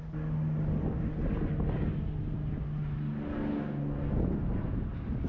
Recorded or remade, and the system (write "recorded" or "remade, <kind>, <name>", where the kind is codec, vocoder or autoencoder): recorded